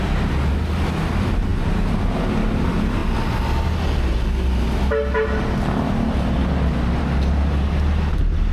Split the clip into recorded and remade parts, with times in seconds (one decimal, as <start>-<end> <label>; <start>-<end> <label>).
0.0-8.5 recorded